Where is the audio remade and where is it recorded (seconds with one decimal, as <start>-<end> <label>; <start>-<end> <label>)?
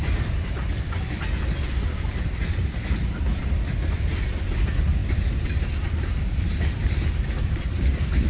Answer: 0.0-8.3 remade